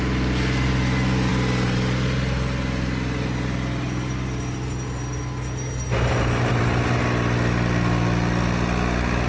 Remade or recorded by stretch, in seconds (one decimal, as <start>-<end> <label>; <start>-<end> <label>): 0.0-9.3 recorded